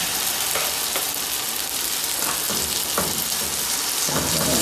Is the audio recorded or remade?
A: recorded